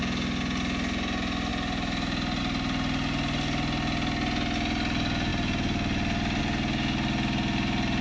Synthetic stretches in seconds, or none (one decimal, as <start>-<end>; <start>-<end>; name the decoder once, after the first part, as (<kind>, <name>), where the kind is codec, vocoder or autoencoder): none